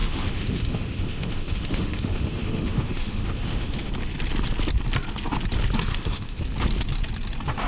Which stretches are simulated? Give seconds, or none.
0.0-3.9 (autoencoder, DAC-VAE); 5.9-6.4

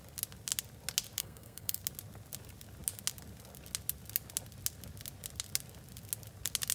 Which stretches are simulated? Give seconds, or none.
1.2-1.8 (codec, SNAC)

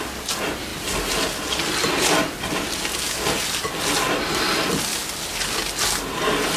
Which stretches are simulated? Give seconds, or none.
none

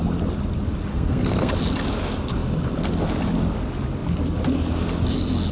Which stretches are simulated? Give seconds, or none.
0.9-1.5 (codec, SNAC)

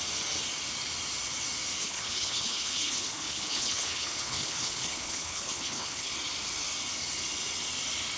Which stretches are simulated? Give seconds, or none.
1.8-6.1 (codec, HILCodec)